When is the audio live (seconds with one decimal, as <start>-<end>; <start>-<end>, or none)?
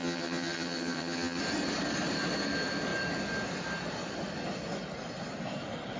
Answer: 1.4-6.0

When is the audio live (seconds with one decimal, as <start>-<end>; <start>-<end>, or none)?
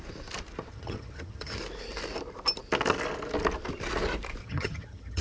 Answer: 0.0-0.7; 1.6-4.4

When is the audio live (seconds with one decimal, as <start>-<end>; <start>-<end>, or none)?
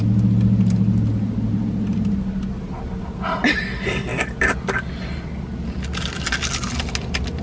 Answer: 0.0-7.4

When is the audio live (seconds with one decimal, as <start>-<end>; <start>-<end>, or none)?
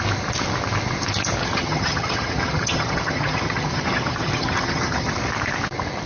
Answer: 0.0-1.4; 5.1-6.1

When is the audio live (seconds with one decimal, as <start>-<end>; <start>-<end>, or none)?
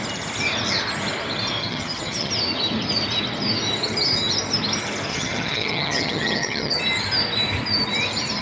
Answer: 0.0-1.6; 2.3-5.1; 6.8-8.4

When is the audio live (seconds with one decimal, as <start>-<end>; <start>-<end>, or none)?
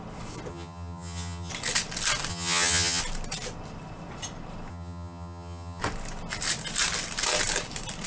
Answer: 0.0-0.5; 1.5-2.3; 3.0-4.7; 5.8-8.1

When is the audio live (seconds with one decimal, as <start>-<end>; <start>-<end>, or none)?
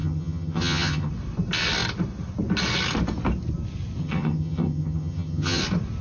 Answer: 1.1-4.0; 5.6-6.0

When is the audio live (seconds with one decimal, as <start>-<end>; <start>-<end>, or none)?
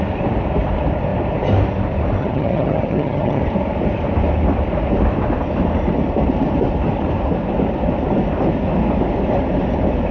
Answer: 0.0-2.2; 3.4-10.1